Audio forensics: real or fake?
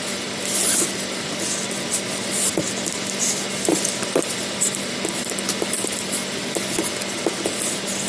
real